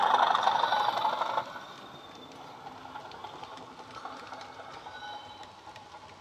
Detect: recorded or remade recorded